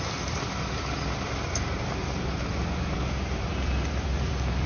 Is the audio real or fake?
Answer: fake